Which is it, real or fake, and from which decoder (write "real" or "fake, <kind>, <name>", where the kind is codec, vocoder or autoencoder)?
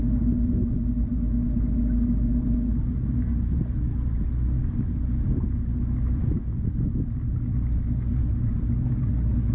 real